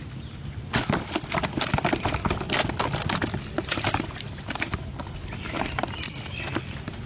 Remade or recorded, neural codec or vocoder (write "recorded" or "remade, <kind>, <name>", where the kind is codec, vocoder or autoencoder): recorded